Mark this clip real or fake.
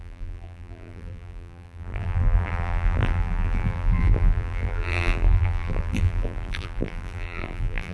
fake